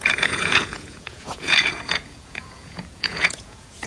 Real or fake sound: fake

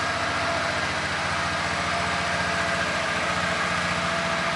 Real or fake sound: real